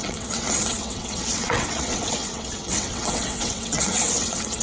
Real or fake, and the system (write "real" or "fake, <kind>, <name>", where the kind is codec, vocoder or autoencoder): fake, vocoder, WaveNeXt